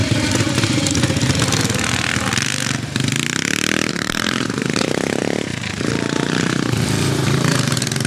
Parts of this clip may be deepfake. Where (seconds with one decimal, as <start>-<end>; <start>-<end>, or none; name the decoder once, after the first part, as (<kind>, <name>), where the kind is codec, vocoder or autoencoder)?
3.9-5.2 (vocoder, BigVGAN v2); 7.0-8.1